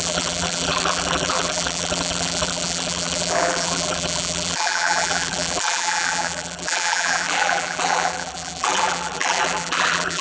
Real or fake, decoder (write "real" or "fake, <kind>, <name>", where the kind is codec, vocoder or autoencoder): fake, vocoder, BigVGAN v2